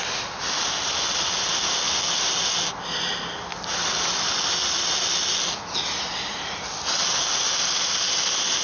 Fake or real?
real